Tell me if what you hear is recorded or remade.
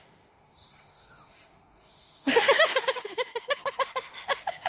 remade